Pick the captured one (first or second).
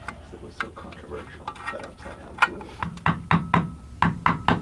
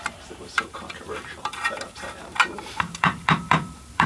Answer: first